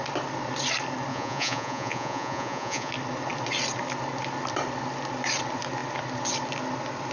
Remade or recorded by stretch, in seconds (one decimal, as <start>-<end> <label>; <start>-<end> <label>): 0.0-1.1 recorded; 1.1-2.9 remade; 2.9-7.1 recorded